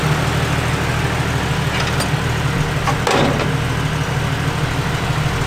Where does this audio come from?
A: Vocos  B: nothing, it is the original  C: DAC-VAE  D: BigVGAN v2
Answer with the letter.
B